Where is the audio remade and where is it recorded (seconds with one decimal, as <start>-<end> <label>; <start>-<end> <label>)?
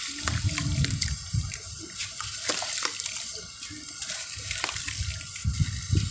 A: 0.0-6.1 remade